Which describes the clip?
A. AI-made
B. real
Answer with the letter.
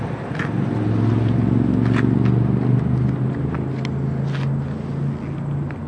B